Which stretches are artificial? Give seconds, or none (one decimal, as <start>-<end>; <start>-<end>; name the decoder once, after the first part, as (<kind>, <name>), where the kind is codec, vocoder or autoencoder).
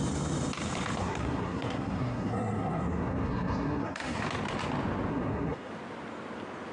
1.0-4.2 (codec, SNAC); 5.1-5.7